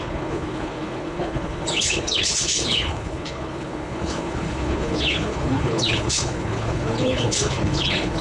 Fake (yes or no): yes